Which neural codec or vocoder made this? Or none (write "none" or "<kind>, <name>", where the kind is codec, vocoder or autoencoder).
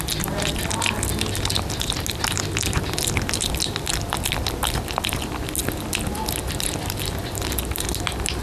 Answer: none